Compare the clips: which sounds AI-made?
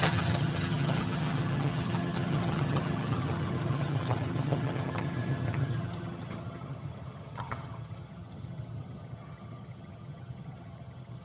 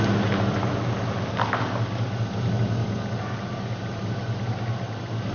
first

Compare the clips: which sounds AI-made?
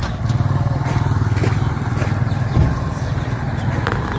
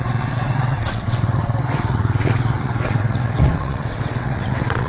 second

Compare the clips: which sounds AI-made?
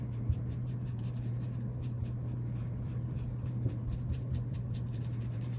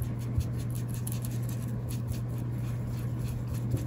first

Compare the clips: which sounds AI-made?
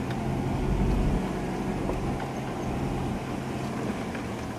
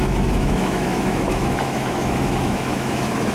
second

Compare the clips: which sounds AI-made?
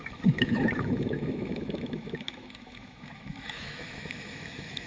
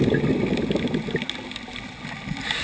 first